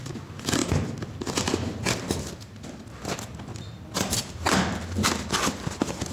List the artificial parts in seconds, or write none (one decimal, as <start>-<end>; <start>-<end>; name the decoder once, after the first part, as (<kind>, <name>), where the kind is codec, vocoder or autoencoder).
0.0-3.5 (vocoder, BigVGAN v2); 4.2-6.1